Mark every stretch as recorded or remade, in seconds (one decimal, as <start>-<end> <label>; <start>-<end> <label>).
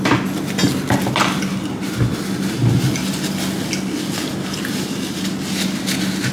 0.0-6.3 recorded